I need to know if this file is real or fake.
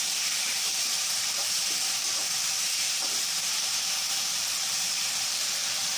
fake